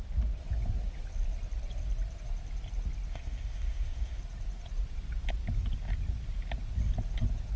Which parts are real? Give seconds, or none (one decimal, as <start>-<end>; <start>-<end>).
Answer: 0.0-3.1; 4.2-7.6